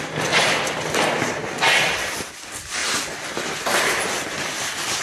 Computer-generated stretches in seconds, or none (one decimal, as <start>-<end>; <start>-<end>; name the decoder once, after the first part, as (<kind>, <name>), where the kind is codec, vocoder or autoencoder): none